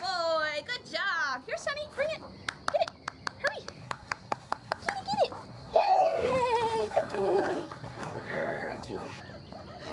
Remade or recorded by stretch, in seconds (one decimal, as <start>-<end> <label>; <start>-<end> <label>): 0.0-3.8 recorded; 3.8-4.8 remade; 4.8-5.5 recorded; 5.5-6.3 remade; 6.3-6.8 recorded; 6.8-9.2 remade; 9.2-9.9 recorded